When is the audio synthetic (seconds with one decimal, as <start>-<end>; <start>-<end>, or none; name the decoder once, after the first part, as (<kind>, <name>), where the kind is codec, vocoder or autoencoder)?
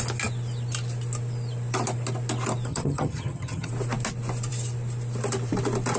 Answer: 2.7-3.7 (vocoder, HiFi-GAN)